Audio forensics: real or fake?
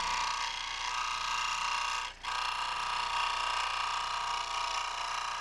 real